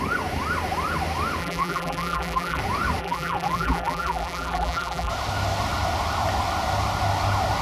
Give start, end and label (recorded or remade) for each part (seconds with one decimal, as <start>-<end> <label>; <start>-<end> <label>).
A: 0.0-1.4 recorded; 1.4-2.6 remade; 2.6-3.0 recorded; 3.0-5.1 remade; 5.1-7.6 recorded